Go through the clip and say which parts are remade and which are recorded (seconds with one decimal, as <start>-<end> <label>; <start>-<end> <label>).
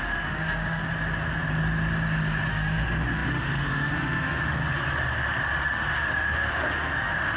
0.0-0.8 remade; 0.8-2.5 recorded; 2.5-4.6 remade; 4.6-5.7 recorded; 5.7-7.4 remade